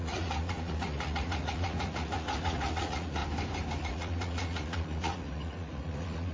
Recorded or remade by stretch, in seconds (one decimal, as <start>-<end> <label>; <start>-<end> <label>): 0.0-3.2 remade; 3.2-3.8 recorded; 3.8-6.3 remade